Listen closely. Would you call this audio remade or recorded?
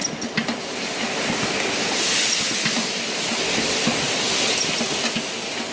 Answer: recorded